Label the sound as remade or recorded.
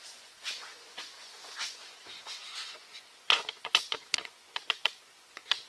remade